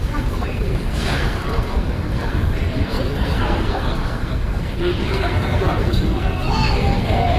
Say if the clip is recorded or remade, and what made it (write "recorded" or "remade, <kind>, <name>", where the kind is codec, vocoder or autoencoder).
remade, codec, SNAC